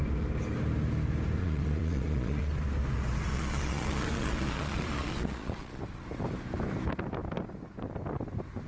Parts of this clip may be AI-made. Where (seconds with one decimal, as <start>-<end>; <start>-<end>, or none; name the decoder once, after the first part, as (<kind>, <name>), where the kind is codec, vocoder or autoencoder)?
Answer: 1.4-2.5 (vocoder, Vocos); 3.3-5.8